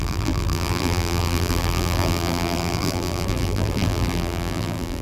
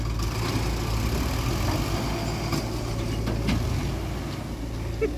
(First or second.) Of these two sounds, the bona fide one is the second